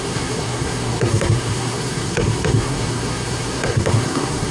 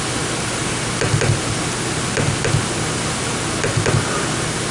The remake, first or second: first